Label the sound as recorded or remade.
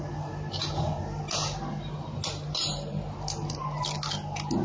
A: recorded